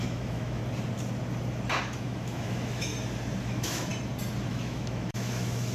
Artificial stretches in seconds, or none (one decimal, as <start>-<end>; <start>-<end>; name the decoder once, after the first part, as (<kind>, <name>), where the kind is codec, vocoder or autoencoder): 0.0-0.6 (autoencoder, DAC-VAE); 1.8-2.9; 3.4-3.9; 4.5-5.7